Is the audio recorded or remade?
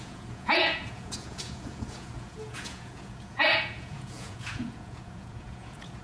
remade